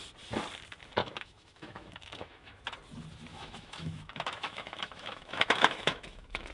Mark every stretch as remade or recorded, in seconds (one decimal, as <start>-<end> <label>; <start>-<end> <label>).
0.0-1.0 recorded; 1.0-2.6 remade; 2.6-3.3 recorded; 3.3-6.5 remade